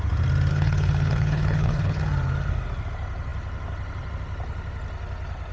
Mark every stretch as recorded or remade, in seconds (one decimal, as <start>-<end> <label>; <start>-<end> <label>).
0.0-0.5 recorded; 0.5-2.0 remade; 2.0-5.5 recorded